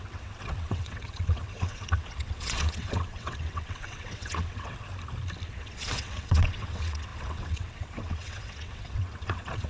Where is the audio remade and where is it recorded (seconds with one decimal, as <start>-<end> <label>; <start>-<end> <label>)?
0.0-4.9 remade; 4.9-5.5 recorded; 5.5-9.7 remade